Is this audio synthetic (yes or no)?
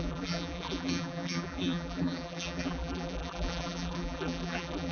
yes